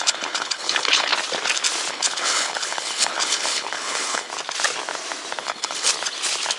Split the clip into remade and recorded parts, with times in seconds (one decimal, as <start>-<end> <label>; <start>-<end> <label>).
0.0-1.1 remade; 1.1-1.9 recorded; 1.9-4.3 remade; 4.3-5.4 recorded; 5.4-5.9 remade; 5.9-6.6 recorded